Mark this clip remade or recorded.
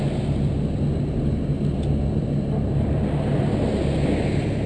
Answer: recorded